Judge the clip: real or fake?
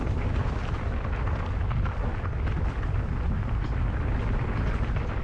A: real